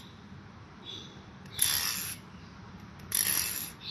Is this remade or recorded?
recorded